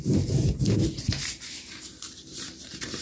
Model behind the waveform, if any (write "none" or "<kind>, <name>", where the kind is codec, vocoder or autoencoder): vocoder, BigVGAN v2